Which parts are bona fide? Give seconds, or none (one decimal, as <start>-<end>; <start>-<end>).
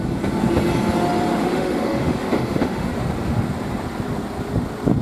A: 0.0-1.3; 2.9-5.0